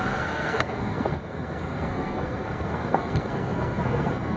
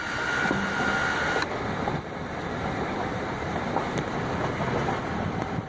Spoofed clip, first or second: first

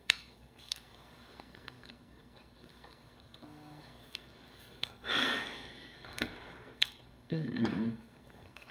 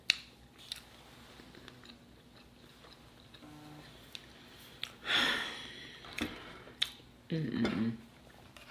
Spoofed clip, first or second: first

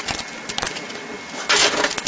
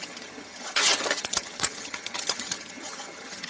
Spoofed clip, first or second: second